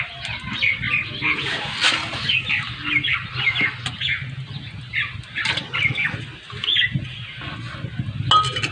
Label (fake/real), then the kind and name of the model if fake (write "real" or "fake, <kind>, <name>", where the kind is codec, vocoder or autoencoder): real